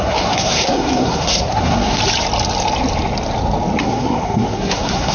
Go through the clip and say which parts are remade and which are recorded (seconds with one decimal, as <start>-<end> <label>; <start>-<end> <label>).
0.0-2.0 remade; 2.0-3.8 recorded; 3.8-5.1 remade